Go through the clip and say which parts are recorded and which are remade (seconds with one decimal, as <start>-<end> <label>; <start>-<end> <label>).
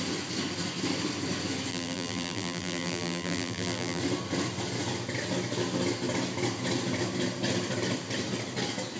0.0-1.7 recorded; 1.7-4.0 remade; 4.0-9.0 recorded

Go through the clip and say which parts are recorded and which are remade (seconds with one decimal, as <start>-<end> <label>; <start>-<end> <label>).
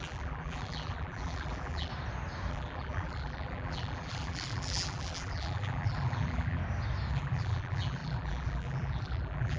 0.0-1.9 remade; 1.9-2.5 recorded; 2.5-6.6 remade; 6.6-7.1 recorded; 7.1-9.6 remade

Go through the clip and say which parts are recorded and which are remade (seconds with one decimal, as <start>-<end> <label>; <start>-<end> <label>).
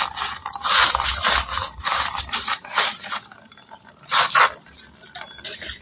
0.0-0.4 recorded; 0.4-3.9 remade; 3.9-5.8 recorded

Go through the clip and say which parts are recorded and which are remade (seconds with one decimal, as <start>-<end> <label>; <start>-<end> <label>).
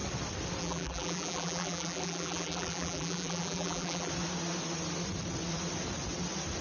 0.0-0.6 recorded; 0.6-4.1 remade; 4.1-6.6 recorded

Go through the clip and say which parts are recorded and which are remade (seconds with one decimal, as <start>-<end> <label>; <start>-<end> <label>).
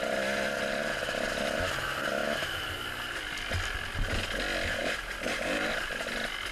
0.0-4.8 recorded; 4.8-5.9 remade; 5.9-6.5 recorded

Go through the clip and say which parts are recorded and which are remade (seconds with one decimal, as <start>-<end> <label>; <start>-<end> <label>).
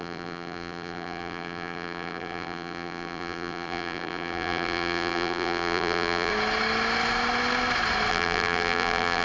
0.0-6.3 remade; 6.3-8.1 recorded; 8.1-9.2 remade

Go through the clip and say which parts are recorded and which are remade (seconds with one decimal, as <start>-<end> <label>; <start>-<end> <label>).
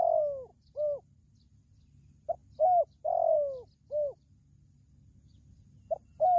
0.0-0.5 recorded; 0.5-1.3 remade; 1.3-6.4 recorded